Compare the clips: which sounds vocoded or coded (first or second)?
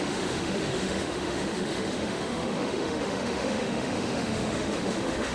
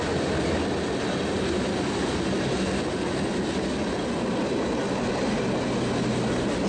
first